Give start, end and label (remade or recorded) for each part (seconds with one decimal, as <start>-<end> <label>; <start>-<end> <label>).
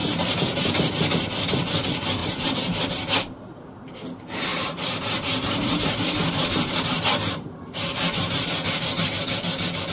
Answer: 0.0-0.9 remade; 0.9-2.2 recorded; 2.2-3.5 remade; 3.5-4.5 recorded; 4.5-9.1 remade; 9.1-9.9 recorded